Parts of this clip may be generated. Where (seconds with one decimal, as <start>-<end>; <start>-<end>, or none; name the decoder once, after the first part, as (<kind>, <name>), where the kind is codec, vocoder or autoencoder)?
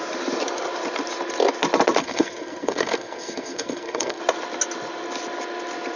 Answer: 2.0-4.2 (codec, SNAC)